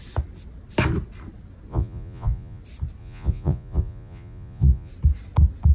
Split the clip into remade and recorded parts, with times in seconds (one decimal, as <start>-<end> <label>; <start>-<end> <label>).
0.0-1.7 recorded; 1.7-2.6 remade; 2.6-3.0 recorded; 3.0-4.9 remade; 4.9-5.7 recorded